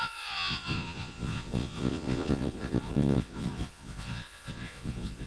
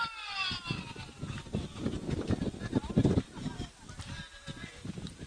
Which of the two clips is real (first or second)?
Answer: second